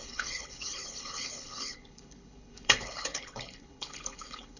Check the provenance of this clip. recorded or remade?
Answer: remade